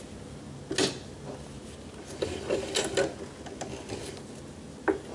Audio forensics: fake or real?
real